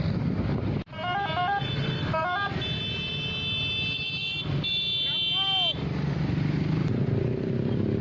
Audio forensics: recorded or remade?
recorded